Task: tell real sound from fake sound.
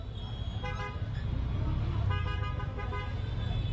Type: real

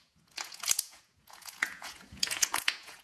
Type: fake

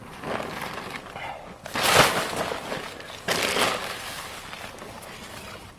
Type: real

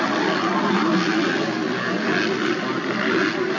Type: real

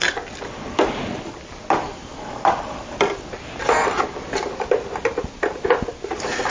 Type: real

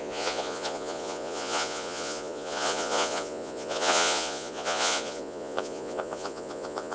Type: fake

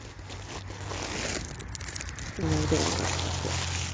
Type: real